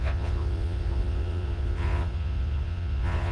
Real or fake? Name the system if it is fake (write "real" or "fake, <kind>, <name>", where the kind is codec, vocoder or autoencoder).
fake, vocoder, Vocos